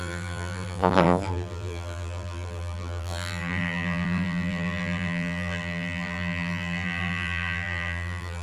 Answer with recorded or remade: remade